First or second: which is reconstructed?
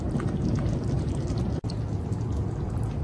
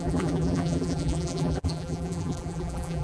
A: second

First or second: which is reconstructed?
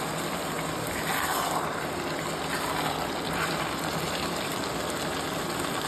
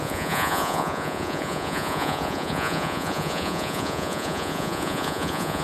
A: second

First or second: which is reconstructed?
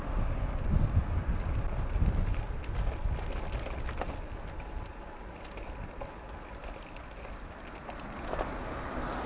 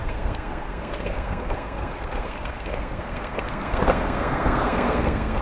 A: second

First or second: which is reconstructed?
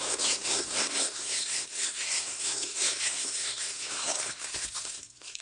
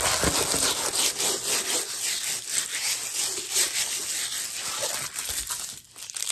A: first